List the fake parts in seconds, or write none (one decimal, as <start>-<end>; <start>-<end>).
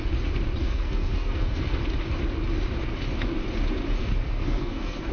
0.6-1.8; 4.0-5.1